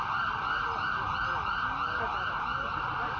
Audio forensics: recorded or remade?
recorded